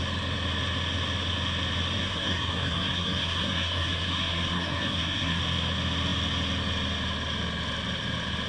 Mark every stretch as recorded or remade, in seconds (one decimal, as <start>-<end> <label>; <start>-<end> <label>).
0.0-2.0 recorded; 2.0-5.4 remade; 5.4-8.5 recorded